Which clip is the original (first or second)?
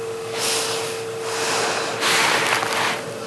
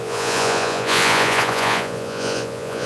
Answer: first